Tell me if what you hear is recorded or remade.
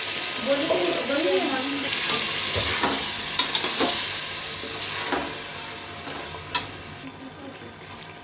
recorded